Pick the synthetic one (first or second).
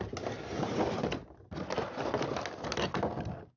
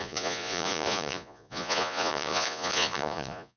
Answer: second